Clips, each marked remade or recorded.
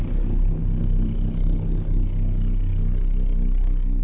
recorded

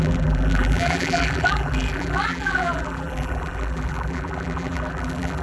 remade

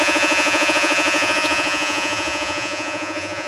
remade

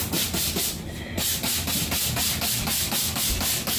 recorded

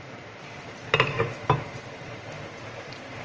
recorded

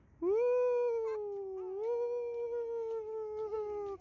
recorded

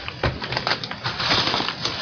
recorded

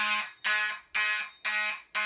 recorded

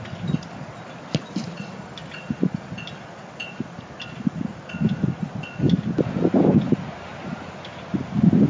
recorded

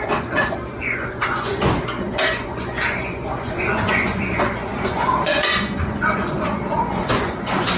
remade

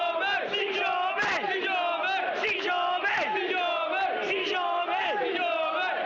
recorded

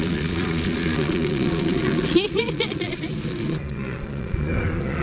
remade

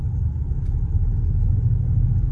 recorded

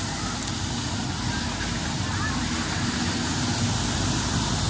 recorded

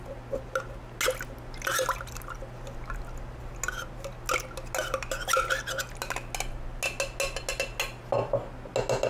recorded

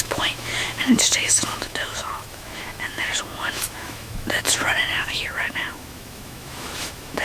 remade